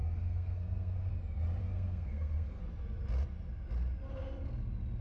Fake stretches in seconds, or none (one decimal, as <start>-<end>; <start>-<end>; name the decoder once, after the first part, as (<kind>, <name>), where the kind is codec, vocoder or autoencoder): 0.0-1.1 (codec, SNAC); 1.6-2.6